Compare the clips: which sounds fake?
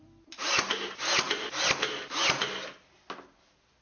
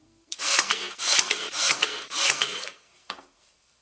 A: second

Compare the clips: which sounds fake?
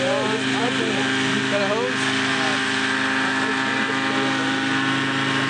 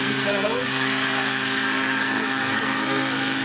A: second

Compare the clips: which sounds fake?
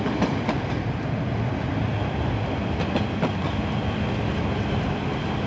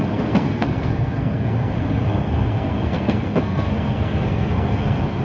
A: second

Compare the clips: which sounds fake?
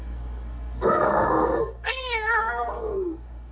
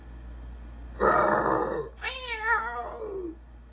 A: first